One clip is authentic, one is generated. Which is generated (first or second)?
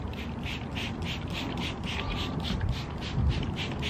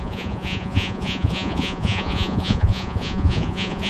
second